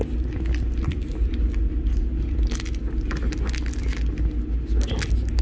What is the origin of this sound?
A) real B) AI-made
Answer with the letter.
A